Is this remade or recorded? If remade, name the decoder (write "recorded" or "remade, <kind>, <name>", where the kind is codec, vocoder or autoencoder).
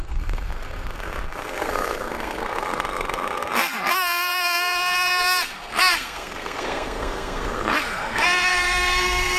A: remade, codec, SNAC